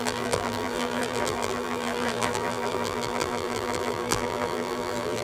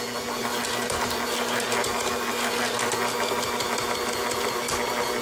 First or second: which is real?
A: second